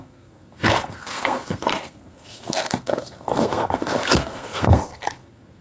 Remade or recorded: remade